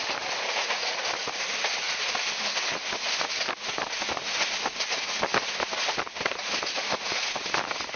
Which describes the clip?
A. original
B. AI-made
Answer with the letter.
A